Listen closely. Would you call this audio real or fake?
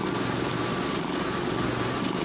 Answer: real